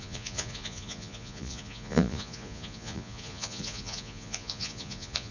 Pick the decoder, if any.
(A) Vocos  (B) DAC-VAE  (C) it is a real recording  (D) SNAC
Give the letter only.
A